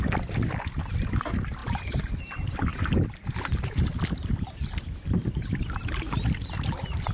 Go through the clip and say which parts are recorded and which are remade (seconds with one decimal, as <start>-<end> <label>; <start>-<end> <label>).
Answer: 0.0-7.1 recorded